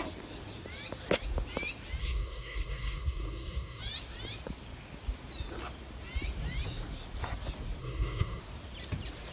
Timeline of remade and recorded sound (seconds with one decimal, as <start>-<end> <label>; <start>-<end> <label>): 0.0-2.0 recorded; 2.0-3.8 remade; 3.8-7.8 recorded; 7.8-8.4 remade; 8.4-9.3 recorded